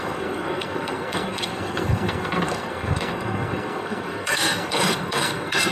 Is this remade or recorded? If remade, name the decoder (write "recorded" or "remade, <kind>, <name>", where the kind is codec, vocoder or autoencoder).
remade, codec, SNAC